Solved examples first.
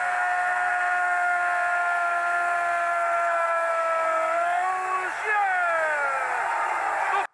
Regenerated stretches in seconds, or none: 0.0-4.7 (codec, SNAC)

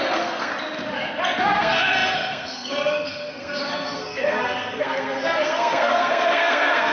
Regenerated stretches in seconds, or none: 0.0-0.5 (codec, SNAC); 1.4-6.9

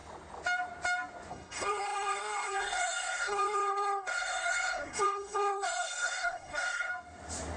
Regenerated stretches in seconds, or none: 1.3-6.9 (codec, SNAC)

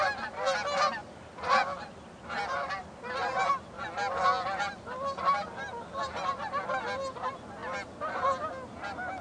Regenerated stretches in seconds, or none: none

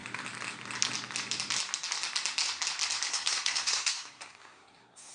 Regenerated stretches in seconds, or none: 3.1-5.1 (codec, SNAC)

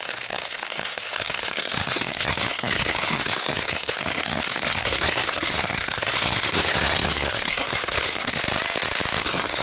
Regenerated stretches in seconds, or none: 0.0-8.4 (codec, SNAC); 9.2-9.6

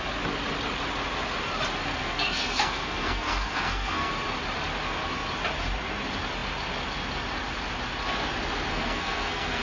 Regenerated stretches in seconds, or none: 1.8-4.1 (codec, SNAC); 8.7-9.6

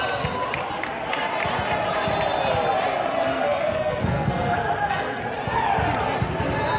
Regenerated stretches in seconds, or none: 3.3-5.2 (codec, SNAC)